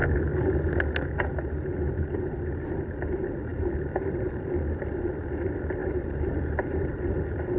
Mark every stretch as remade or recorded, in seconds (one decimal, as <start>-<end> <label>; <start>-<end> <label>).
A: 0.0-3.5 recorded; 3.5-4.4 remade; 4.4-5.8 recorded; 5.8-6.9 remade; 6.9-7.6 recorded